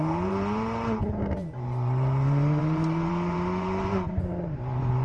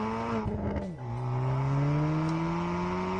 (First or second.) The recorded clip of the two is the second